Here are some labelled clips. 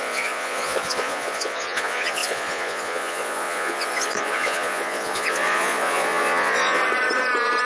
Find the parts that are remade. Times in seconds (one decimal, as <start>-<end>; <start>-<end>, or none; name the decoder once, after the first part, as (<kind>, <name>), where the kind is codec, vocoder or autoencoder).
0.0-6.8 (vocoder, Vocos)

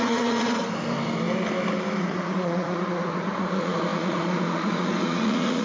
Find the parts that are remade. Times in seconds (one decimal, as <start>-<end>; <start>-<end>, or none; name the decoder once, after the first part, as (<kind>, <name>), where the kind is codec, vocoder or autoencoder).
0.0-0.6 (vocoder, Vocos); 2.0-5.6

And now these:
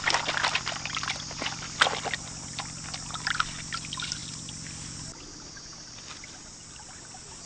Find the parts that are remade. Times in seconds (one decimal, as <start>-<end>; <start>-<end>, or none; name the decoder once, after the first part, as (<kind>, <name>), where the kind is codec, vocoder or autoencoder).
none